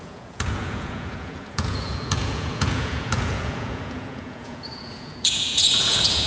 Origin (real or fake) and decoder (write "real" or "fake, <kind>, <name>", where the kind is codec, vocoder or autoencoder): fake, vocoder, Vocos